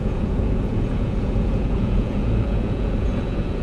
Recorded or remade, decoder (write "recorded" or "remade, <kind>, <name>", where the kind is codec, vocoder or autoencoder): remade, vocoder, Vocos